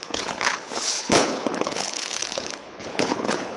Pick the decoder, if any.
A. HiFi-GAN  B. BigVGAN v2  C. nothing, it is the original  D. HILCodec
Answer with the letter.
D